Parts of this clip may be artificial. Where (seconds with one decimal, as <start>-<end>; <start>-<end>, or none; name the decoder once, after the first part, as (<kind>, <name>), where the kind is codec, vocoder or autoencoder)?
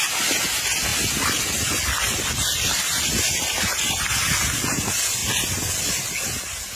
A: none